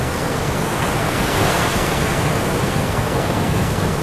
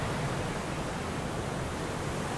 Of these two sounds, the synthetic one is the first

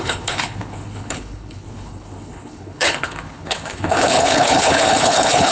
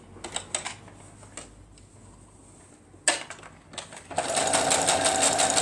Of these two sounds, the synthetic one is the first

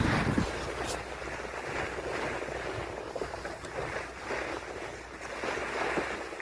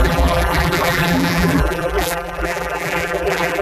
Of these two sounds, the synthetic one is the second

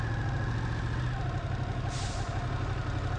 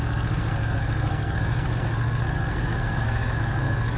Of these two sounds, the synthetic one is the second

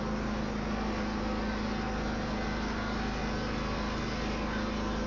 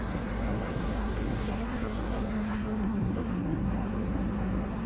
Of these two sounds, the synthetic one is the second